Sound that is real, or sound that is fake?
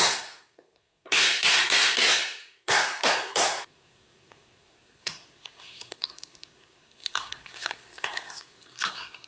fake